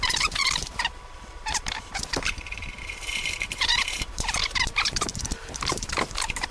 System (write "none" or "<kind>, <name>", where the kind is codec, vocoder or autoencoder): vocoder, BigVGAN v2